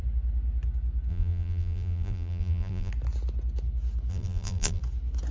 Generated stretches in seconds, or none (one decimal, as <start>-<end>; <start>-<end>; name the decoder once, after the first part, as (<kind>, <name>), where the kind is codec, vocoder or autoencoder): 1.1-2.9 (vocoder, BigVGAN v2); 4.1-4.8